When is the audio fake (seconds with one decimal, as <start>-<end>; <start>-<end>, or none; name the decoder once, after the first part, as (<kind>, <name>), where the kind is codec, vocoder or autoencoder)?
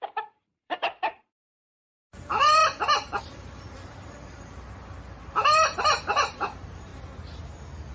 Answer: 0.0-2.6 (vocoder, BigVGAN v2); 3.2-6.9